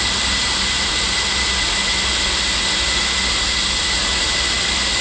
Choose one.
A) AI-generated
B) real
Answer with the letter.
B